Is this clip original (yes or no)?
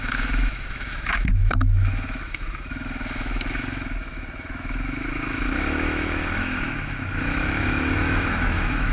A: no